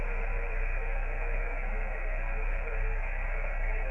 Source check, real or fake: fake